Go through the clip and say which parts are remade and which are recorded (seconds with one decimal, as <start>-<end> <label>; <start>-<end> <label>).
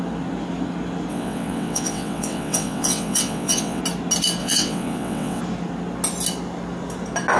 0.0-1.1 recorded; 1.1-3.8 remade; 3.8-4.4 recorded; 4.4-5.4 remade; 5.4-7.4 recorded